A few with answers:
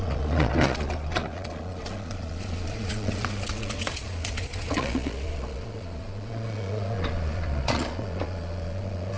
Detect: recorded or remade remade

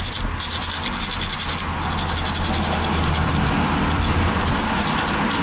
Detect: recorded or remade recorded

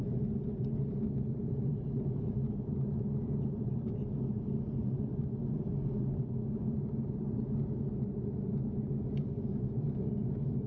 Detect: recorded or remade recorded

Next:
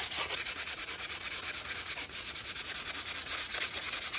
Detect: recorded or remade remade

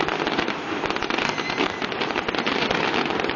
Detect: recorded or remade recorded